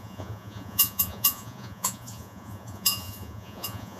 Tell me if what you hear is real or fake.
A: fake